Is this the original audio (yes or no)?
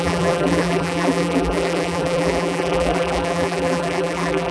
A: no